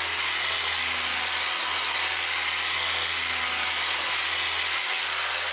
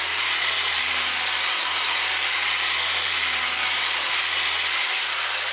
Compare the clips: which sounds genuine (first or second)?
first